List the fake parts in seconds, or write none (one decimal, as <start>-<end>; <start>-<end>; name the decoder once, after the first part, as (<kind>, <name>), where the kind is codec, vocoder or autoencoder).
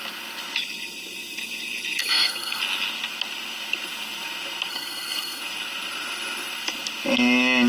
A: 2.0-2.6 (codec, SNAC); 4.7-5.4